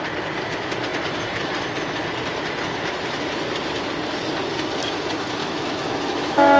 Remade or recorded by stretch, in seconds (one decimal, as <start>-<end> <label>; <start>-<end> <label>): 0.0-5.4 recorded; 5.4-6.6 remade